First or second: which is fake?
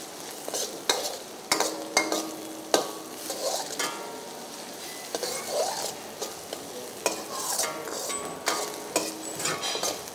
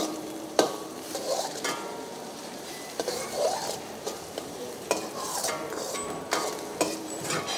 second